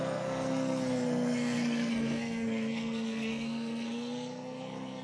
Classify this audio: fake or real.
fake